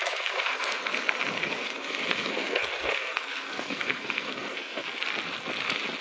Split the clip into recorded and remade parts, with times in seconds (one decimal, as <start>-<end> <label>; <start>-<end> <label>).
0.0-0.9 remade; 0.9-1.4 recorded; 1.4-5.0 remade; 5.0-6.0 recorded